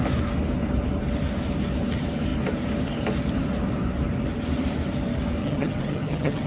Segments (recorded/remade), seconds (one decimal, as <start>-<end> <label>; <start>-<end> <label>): 0.0-5.4 recorded; 5.4-6.5 remade